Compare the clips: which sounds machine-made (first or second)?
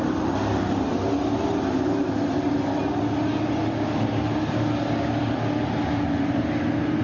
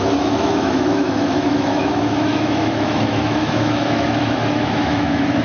second